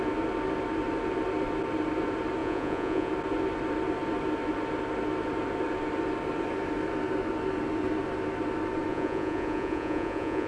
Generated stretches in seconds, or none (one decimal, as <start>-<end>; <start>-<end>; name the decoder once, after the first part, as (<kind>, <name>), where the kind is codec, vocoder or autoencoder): 2.4-3.1 (vocoder, Vocos); 8.9-10.5